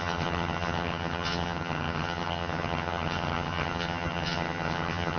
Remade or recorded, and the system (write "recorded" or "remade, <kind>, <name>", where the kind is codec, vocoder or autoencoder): remade, vocoder, HiFi-GAN